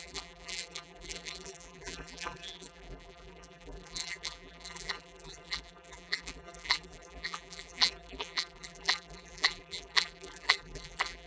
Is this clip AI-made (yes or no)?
yes